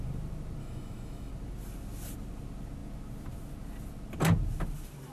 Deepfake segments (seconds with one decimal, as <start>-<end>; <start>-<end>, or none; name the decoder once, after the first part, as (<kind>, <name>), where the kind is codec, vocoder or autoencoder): 0.6-1.3 (autoencoder, DAC-VAE)